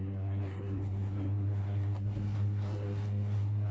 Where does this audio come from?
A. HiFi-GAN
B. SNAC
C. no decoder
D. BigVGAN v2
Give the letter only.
B